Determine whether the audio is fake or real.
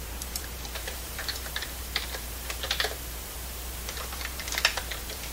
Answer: fake